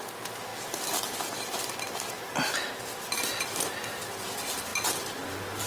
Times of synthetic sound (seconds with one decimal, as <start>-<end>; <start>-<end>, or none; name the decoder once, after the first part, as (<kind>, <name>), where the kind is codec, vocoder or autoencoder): none